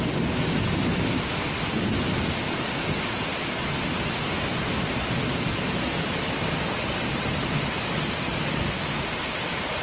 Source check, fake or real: real